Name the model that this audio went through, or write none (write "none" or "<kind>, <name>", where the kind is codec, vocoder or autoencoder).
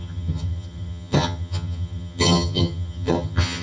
vocoder, HiFi-GAN